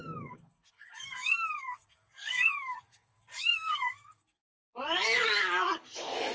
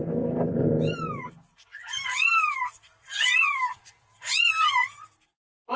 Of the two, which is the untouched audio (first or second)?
second